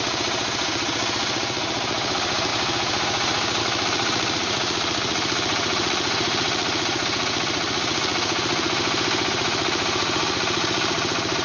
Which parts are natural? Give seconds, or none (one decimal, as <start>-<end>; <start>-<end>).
8.8-9.3

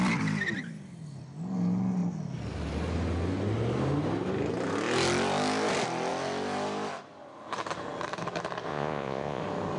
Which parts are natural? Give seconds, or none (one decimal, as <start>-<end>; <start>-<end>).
0.0-8.7; 9.4-9.8

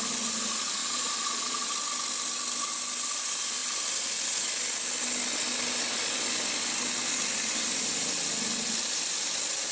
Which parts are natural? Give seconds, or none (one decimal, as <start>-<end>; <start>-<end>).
0.0-0.8; 1.7-9.7

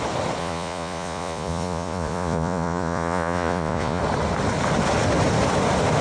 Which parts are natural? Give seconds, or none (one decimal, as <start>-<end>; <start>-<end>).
0.0-0.4; 4.0-6.0

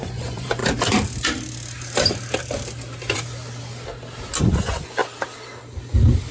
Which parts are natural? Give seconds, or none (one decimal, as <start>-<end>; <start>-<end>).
0.6-4.4; 5.0-6.3

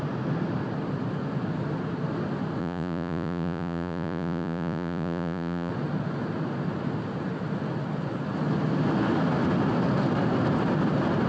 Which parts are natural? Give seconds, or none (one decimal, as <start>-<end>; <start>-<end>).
0.0-2.6; 5.7-11.3

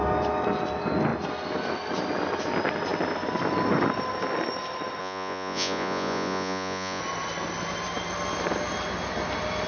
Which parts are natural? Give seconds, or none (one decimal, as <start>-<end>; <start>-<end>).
0.0-5.0; 7.0-9.7

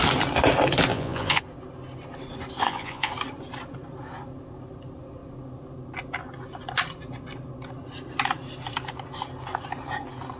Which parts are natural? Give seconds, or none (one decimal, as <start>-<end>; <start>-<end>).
0.0-0.9; 1.4-2.6; 3.1-10.4